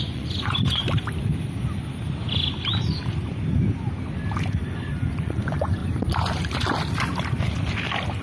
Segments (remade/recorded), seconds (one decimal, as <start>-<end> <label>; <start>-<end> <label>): 0.0-0.8 remade; 0.8-5.2 recorded; 5.2-5.8 remade; 5.8-8.2 recorded